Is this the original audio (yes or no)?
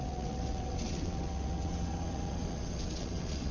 no